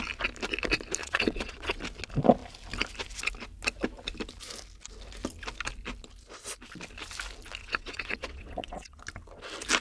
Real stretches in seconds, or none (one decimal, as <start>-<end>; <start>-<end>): 0.0-1.0; 1.8-7.6; 9.0-9.8